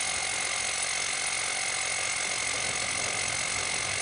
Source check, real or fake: real